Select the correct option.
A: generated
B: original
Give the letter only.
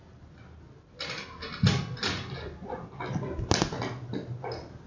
B